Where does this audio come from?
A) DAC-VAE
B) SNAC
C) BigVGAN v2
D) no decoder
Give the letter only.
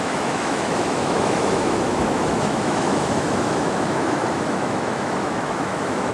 A